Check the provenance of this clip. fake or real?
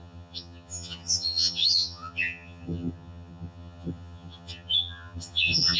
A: fake